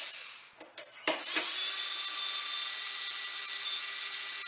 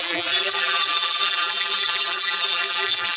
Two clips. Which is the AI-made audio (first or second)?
second